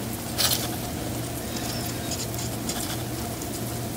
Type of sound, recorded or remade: recorded